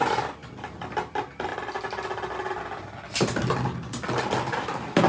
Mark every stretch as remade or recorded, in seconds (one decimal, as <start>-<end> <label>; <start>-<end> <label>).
0.0-5.1 recorded